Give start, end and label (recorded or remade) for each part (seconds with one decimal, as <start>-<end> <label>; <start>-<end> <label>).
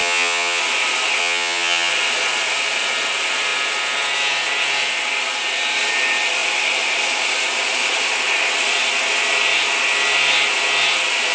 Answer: 0.0-0.6 remade; 0.6-1.2 recorded; 1.2-1.9 remade; 1.9-11.3 recorded